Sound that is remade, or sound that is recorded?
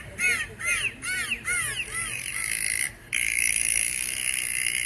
recorded